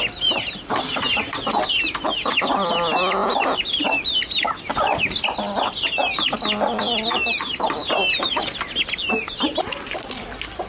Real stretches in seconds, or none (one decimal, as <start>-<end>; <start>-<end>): 0.0-10.7